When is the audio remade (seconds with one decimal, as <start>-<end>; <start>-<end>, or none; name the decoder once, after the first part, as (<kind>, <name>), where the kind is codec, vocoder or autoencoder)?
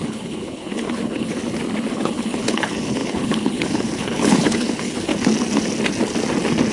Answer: 0.0-1.4 (codec, HILCodec); 1.9-5.1